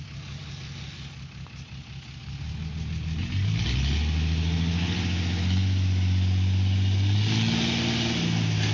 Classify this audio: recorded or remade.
recorded